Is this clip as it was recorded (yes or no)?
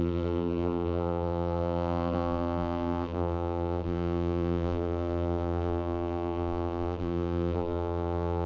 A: no